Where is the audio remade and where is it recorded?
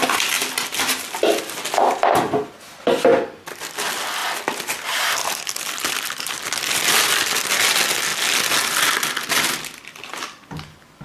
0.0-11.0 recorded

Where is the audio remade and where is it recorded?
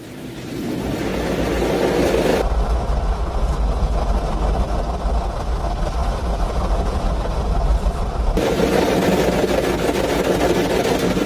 0.0-6.0 recorded; 6.0-8.1 remade; 8.1-11.3 recorded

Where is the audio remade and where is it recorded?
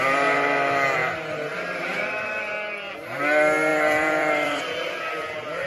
0.0-1.0 recorded; 1.0-2.9 remade; 2.9-3.7 recorded; 3.7-5.0 remade; 5.0-5.7 recorded